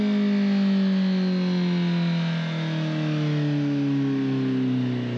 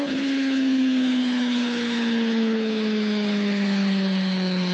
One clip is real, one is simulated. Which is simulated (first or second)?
second